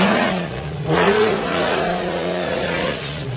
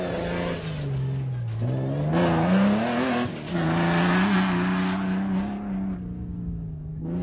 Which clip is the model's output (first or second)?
first